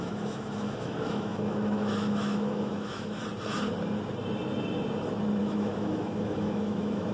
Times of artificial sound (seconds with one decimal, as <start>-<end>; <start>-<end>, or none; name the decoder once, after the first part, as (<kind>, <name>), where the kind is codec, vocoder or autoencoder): 0.0-3.2 (autoencoder, DAC-VAE); 5.4-7.1

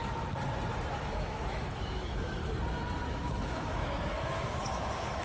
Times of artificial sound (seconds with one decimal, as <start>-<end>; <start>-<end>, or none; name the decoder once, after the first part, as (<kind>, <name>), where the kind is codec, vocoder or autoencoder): 0.7-2.4 (autoencoder, DAC-VAE); 3.1-5.2

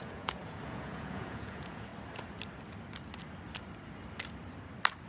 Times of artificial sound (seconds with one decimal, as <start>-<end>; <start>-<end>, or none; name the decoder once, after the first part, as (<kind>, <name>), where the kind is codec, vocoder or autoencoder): 0.0-1.9 (vocoder, Vocos)